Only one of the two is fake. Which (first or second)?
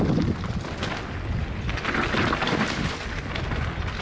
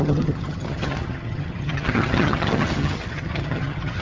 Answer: second